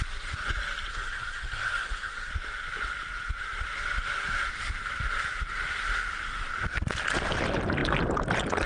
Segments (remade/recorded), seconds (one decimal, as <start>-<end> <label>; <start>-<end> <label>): 0.0-0.9 recorded; 0.9-2.3 remade; 2.3-8.7 recorded